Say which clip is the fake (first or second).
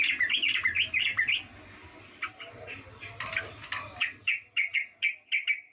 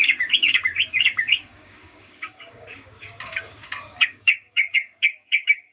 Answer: second